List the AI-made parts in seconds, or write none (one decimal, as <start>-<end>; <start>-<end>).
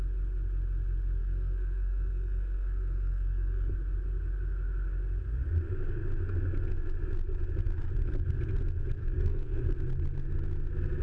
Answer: 1.2-3.7; 9.0-9.6